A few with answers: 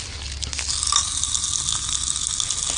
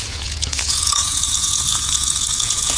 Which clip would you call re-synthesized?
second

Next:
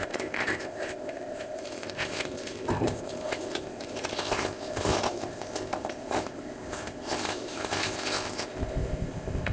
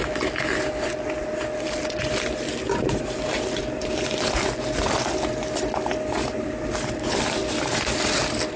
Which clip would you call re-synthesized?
first